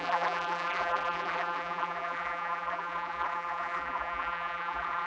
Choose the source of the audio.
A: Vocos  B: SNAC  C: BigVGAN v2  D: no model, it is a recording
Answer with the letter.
C